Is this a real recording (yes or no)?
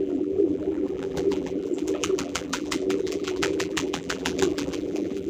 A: no